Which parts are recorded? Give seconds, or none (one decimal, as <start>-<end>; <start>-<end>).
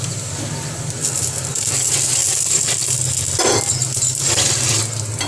0.0-5.3